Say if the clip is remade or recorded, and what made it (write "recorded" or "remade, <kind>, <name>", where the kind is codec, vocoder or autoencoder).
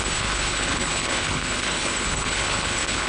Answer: remade, codec, HILCodec